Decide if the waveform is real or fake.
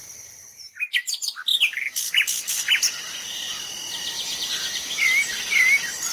real